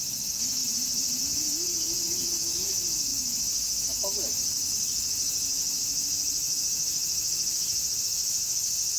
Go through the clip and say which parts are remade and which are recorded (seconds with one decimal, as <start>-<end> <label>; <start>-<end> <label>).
0.0-9.0 remade